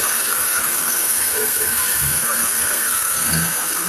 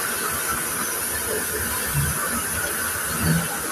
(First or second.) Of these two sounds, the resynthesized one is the first